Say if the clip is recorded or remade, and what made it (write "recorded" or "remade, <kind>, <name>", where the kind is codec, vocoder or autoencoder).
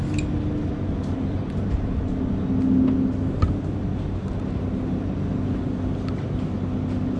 recorded